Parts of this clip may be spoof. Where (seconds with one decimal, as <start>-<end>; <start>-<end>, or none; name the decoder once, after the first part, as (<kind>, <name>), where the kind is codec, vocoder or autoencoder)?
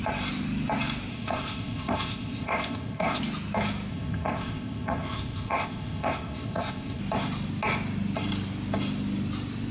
1.1-3.2 (codec, ZipCodec); 3.9-7.0